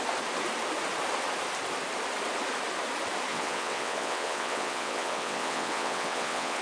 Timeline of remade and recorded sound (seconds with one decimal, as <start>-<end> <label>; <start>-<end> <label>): 0.0-3.3 recorded; 3.3-6.6 remade